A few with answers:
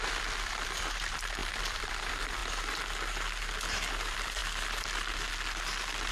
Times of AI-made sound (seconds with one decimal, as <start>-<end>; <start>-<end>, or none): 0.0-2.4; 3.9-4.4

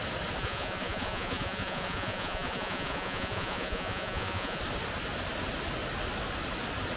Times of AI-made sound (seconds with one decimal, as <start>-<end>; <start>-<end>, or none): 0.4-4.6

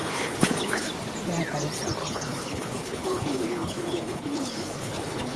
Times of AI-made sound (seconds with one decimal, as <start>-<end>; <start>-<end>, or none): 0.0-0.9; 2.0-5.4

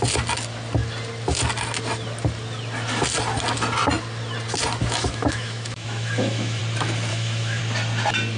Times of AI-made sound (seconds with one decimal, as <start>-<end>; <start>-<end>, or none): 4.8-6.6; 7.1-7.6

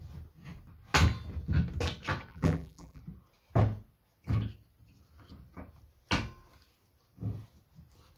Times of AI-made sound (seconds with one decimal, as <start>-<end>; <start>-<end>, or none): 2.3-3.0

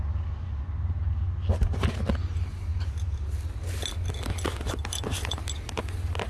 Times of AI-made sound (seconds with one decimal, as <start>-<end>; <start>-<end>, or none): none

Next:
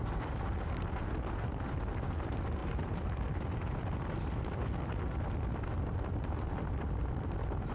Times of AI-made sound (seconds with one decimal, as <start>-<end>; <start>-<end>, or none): 2.6-3.2

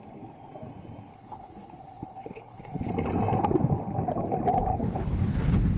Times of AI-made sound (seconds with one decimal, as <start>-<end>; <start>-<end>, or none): 1.1-2.9; 4.7-5.8